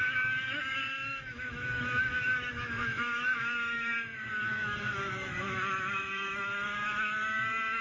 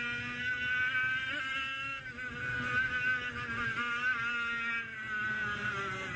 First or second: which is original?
second